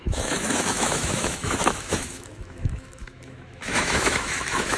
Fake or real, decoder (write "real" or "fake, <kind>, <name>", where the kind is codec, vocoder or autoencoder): fake, autoencoder, DAC-VAE